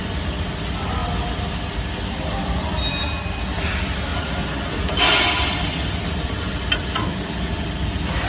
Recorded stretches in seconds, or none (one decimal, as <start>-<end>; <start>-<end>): 0.0-8.3